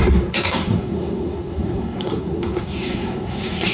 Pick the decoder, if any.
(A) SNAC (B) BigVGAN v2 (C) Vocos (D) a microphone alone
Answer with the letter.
A